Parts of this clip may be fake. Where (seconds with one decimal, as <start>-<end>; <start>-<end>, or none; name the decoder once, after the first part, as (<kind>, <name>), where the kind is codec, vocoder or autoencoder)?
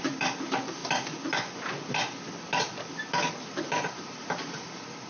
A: 0.0-0.8 (vocoder, BigVGAN v2); 3.3-5.1